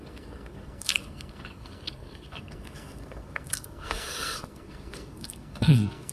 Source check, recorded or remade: remade